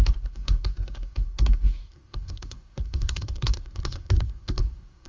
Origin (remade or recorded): remade